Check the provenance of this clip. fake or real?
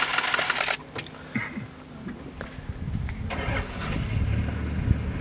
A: real